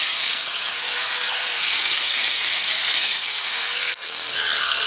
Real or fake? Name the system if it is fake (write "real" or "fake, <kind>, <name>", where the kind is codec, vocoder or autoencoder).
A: fake, codec, SNAC